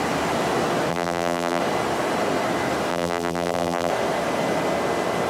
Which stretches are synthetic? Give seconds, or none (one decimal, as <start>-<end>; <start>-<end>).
0.9-1.6; 2.9-3.9